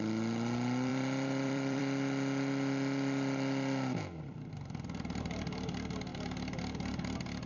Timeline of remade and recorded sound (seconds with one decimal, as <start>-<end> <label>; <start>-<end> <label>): 0.0-0.9 recorded; 0.9-1.8 remade; 1.8-7.5 recorded

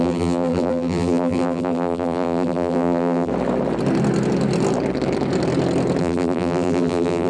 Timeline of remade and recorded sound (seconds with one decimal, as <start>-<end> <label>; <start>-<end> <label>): 0.0-3.3 remade; 3.3-6.0 recorded; 6.0-7.3 remade

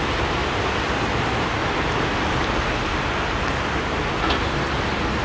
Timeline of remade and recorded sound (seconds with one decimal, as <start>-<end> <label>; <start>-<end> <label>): 0.0-5.2 recorded

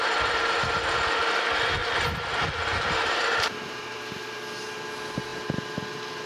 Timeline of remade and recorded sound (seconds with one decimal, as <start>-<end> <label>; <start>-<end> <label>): 0.0-1.8 recorded; 1.8-4.4 remade; 4.4-6.3 recorded

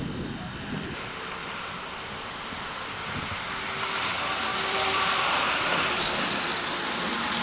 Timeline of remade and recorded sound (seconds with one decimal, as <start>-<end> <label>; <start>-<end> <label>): 0.0-1.4 recorded; 1.4-3.4 remade; 3.4-4.5 recorded; 4.5-5.5 remade; 5.5-7.4 recorded

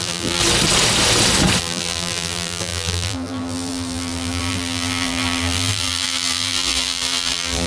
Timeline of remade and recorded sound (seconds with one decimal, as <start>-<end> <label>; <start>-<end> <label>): 0.0-0.4 remade; 0.4-1.6 recorded; 1.6-7.7 remade